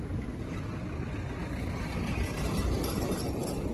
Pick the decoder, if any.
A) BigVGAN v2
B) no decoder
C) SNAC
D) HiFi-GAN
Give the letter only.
B